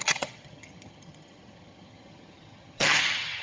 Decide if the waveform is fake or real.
fake